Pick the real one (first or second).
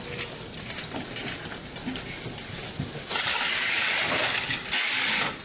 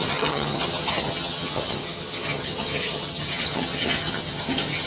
first